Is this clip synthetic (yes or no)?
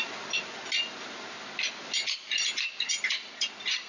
no